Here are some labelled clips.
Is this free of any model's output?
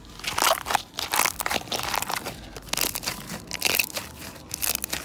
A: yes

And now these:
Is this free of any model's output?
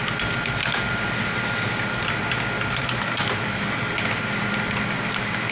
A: yes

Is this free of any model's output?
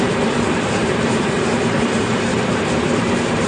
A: no